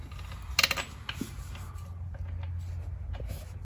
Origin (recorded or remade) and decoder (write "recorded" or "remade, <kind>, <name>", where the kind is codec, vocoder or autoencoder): recorded